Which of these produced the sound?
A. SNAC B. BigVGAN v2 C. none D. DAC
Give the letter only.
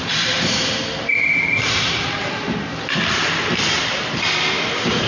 B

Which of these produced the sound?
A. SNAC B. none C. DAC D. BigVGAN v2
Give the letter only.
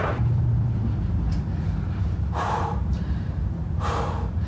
D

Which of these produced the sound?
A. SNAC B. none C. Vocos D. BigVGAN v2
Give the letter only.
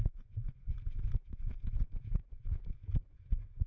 B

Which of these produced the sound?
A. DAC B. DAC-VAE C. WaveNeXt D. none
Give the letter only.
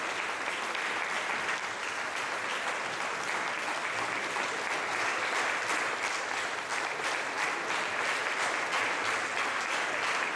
D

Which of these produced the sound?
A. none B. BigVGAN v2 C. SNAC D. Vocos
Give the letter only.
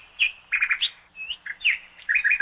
B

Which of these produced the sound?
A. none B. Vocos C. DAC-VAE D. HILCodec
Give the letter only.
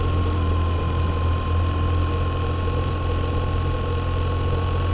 A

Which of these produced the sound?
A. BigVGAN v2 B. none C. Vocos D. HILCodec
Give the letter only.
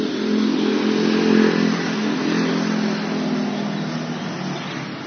B